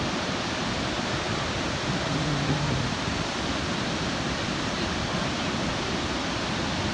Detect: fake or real fake